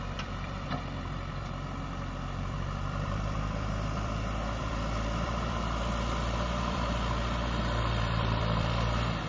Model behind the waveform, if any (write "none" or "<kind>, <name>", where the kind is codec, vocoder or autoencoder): vocoder, BigVGAN v2